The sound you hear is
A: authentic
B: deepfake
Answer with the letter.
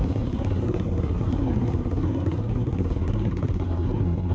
B